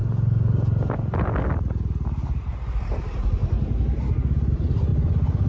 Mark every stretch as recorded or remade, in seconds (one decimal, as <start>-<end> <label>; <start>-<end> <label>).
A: 0.0-5.5 recorded